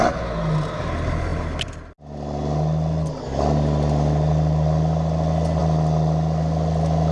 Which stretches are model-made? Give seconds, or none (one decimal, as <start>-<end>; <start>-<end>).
none